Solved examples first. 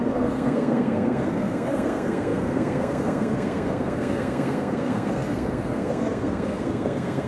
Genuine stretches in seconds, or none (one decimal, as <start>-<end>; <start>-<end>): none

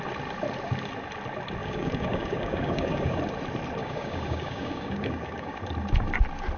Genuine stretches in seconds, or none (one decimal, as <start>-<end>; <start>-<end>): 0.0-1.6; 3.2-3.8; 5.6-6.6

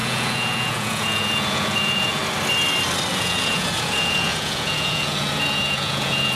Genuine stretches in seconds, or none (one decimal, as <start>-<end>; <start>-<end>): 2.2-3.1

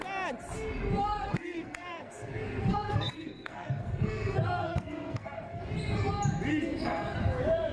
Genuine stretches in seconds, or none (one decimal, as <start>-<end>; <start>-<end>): 0.0-1.0; 5.6-6.5; 7.2-7.7

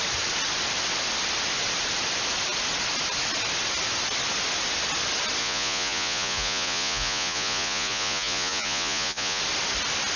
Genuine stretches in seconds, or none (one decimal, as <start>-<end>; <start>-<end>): 0.0-5.4; 9.4-10.2

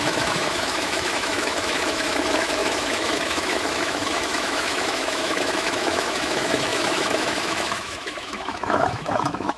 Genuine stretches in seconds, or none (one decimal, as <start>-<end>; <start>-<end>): none